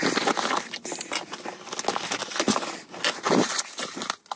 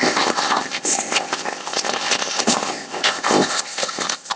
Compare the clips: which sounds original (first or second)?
first